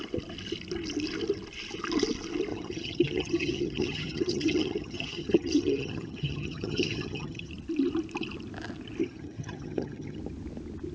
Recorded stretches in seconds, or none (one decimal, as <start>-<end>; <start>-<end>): 0.0-2.5; 7.5-9.0; 10.2-10.9